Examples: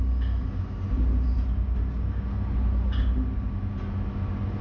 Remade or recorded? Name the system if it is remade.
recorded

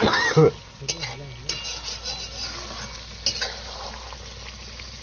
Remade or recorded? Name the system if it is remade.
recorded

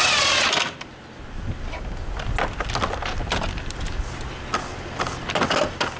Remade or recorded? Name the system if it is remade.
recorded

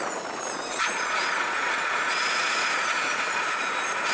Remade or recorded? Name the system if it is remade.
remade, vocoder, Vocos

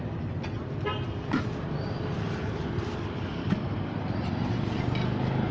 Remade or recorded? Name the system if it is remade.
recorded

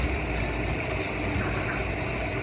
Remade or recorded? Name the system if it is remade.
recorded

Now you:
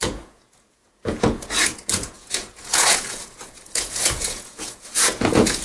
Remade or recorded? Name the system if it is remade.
remade, vocoder, Vocos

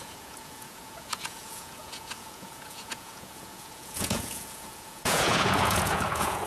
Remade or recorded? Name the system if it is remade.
remade, vocoder, Vocos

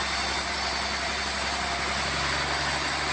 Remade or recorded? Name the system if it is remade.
recorded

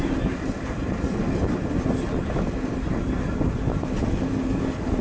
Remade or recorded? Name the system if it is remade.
recorded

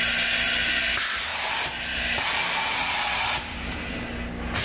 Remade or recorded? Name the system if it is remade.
recorded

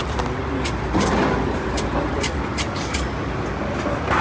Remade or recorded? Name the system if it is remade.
recorded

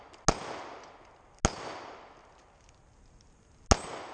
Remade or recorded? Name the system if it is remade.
recorded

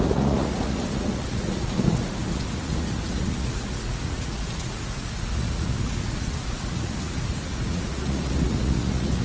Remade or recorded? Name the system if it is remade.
remade, vocoder, Vocos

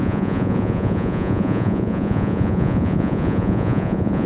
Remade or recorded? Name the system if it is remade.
remade, vocoder, Vocos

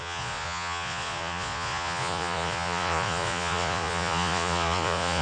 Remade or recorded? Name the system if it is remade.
remade, vocoder, Vocos